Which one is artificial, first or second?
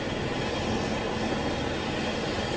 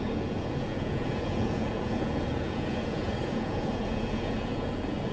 second